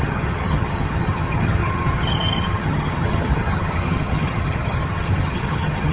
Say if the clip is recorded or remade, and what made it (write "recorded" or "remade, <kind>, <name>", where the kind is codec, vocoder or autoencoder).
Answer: remade, vocoder, HiFi-GAN